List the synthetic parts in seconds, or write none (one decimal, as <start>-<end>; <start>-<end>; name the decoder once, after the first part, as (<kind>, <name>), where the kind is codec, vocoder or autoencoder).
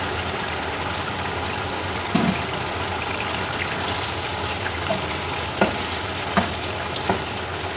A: none